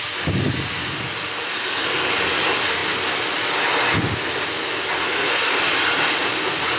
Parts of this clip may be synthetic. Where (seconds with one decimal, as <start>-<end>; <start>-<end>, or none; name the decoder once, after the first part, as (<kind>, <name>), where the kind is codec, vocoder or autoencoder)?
1.5-2.1 (codec, SNAC); 5.0-5.6